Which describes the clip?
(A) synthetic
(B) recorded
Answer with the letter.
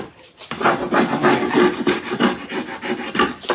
B